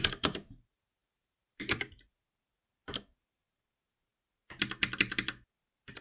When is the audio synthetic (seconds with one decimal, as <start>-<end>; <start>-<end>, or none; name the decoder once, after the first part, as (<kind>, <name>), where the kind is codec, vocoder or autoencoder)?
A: 0.0-6.0 (vocoder, BigVGAN v2)